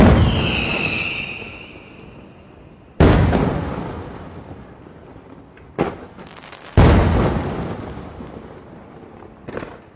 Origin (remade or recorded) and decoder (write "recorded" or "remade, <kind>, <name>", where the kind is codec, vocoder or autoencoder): recorded